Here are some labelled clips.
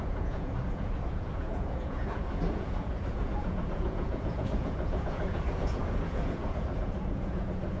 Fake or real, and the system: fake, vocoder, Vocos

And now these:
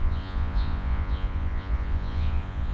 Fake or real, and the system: fake, vocoder, Vocos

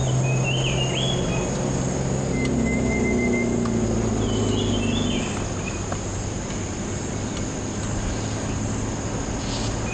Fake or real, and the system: real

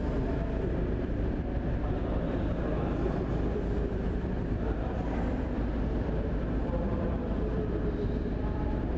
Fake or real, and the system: fake, vocoder, BigVGAN v2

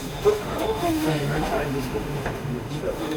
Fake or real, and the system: fake, autoencoder, DAC-VAE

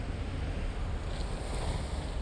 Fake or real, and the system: real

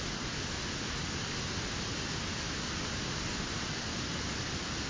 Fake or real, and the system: real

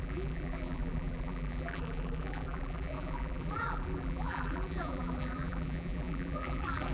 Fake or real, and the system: fake, vocoder, BigVGAN v2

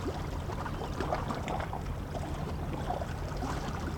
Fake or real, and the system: fake, vocoder, BigVGAN v2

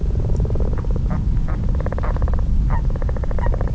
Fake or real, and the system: real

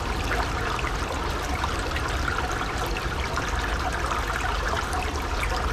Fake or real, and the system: real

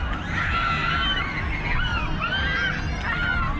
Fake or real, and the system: real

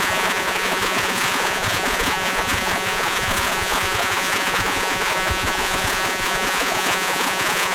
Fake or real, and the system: fake, vocoder, Vocos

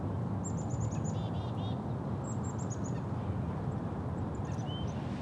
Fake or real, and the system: real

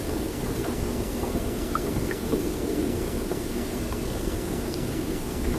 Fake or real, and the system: fake, codec, SNAC